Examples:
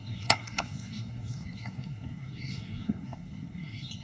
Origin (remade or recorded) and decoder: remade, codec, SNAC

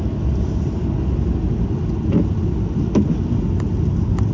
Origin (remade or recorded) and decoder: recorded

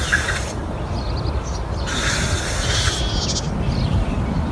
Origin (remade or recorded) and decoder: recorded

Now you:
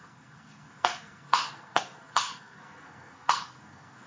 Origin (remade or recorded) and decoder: remade, codec, SNAC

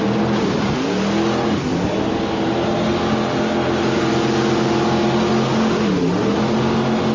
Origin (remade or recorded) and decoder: recorded